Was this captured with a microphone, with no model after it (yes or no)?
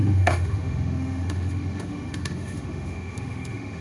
no